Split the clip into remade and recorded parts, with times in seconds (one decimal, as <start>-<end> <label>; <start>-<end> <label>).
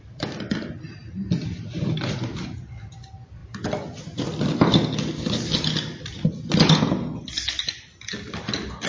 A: 0.0-8.9 recorded